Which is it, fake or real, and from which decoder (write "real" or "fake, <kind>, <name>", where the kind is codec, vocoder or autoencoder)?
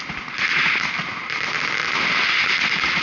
real